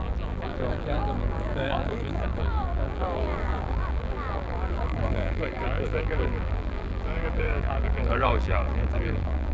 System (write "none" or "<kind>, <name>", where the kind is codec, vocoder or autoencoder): vocoder, BigVGAN v2